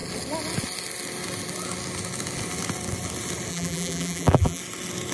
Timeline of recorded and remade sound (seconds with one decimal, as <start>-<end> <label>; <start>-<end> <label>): 0.0-3.5 recorded; 3.5-4.6 remade; 4.6-5.1 recorded